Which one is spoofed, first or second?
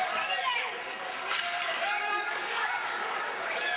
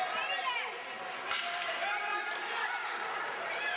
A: first